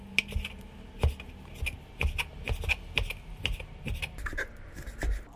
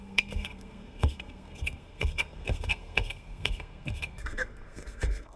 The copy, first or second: second